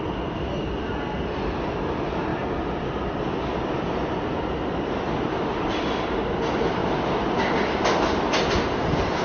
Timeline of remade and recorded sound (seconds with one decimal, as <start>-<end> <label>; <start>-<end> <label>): 0.0-9.2 recorded